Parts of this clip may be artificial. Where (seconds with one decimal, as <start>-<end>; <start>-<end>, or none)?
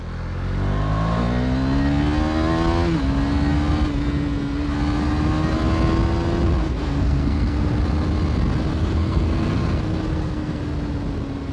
6.6-7.8; 8.7-10.6